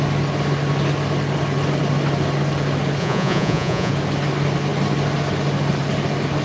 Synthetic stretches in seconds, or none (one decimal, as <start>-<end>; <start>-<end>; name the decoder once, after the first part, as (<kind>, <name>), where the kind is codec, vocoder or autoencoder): 3.0-3.9 (vocoder, Vocos)